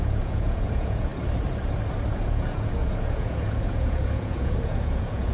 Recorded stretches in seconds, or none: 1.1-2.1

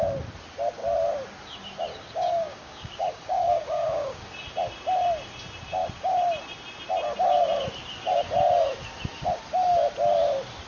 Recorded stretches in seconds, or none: 0.0-1.9; 4.3-10.7

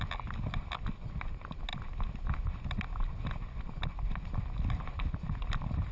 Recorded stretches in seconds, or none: 0.0-5.9